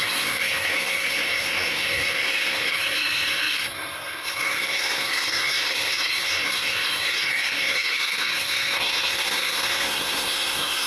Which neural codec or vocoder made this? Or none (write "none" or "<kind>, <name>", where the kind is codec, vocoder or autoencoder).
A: codec, SNAC